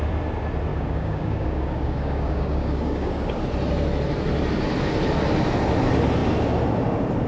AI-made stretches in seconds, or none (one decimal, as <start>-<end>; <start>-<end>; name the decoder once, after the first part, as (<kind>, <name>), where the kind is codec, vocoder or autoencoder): 0.7-3.4 (codec, DAC)